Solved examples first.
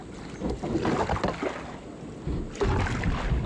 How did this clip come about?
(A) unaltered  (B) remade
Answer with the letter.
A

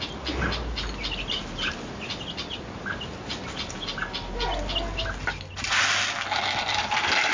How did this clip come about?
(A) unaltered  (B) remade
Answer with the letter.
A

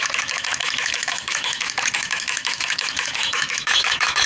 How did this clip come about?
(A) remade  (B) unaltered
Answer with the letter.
A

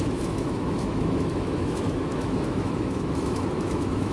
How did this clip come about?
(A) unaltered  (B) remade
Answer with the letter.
B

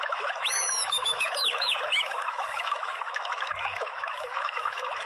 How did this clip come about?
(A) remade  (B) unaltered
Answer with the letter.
A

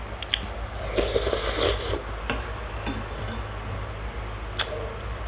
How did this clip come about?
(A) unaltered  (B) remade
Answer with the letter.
A